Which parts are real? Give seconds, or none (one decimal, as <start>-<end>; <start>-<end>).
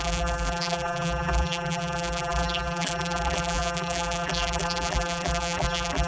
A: none